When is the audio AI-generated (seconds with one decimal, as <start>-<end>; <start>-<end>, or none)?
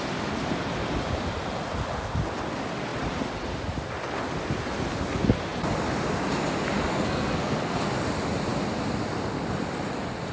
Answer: 6.9-7.8